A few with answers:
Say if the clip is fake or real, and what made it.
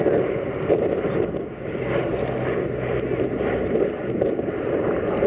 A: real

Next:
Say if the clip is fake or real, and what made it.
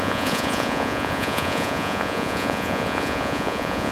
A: fake, vocoder, Vocos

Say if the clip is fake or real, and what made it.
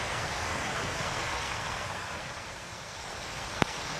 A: fake, codec, SNAC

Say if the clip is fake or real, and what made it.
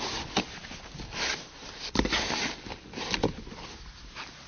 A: real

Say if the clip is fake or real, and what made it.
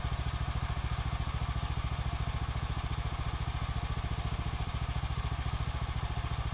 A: real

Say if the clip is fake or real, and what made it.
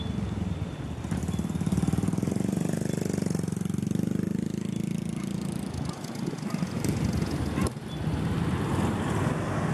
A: real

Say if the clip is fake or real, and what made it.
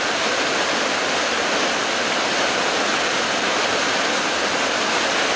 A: real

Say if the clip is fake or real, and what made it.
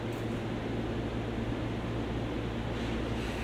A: real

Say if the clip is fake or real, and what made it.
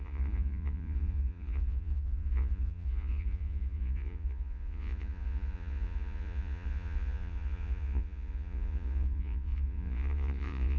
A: fake, vocoder, Vocos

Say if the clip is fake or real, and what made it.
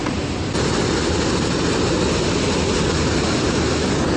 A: real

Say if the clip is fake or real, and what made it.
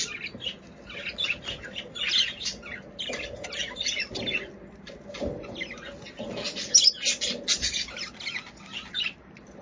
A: real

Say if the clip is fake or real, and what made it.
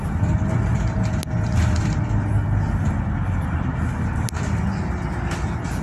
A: real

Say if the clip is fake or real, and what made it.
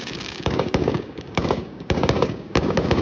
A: fake, codec, DAC